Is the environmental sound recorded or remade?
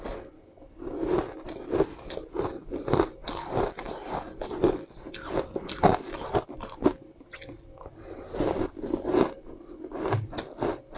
recorded